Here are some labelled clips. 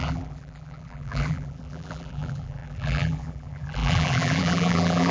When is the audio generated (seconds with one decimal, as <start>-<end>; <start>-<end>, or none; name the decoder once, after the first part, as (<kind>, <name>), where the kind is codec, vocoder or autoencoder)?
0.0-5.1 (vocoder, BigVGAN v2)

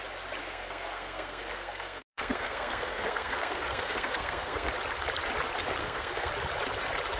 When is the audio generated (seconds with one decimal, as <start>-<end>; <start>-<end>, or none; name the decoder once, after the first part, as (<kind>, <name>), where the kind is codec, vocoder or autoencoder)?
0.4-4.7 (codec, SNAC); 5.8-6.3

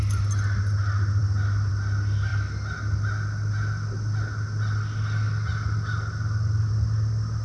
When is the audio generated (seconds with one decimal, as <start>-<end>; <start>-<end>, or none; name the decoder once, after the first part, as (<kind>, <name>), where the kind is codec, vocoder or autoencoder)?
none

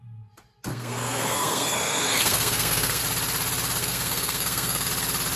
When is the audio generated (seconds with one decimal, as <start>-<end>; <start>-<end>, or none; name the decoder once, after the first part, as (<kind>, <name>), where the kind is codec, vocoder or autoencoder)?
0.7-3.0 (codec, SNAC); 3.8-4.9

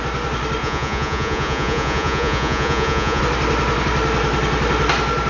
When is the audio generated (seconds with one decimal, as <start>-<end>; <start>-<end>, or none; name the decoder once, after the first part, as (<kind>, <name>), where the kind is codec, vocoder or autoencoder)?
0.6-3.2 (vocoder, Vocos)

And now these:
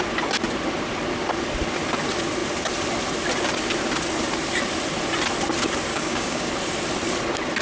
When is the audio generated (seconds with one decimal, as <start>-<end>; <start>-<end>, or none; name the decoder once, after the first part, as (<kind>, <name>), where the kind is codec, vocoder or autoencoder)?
5.9-6.5 (codec, DAC)